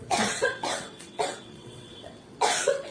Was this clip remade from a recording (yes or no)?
yes